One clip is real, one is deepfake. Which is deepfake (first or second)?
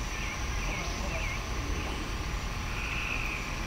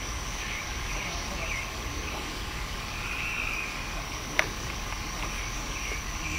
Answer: second